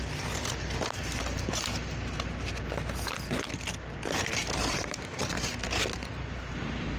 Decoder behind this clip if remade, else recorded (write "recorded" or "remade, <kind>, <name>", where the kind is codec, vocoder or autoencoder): recorded